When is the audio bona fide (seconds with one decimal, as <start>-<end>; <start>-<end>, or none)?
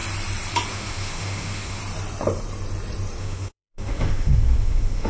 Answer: 0.0-0.7; 1.8-3.2